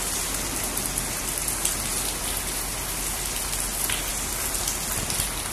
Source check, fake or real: real